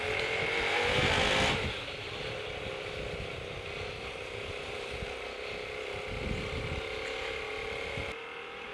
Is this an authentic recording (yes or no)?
yes